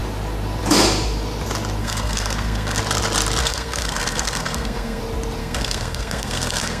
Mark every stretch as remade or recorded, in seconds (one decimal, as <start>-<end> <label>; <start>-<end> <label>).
0.0-1.8 recorded; 1.8-2.8 remade; 2.8-3.4 recorded; 3.4-5.0 remade; 5.0-5.4 recorded; 5.4-6.8 remade